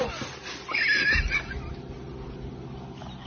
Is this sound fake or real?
real